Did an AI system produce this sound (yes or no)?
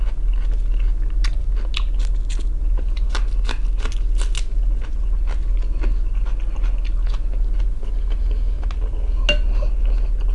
no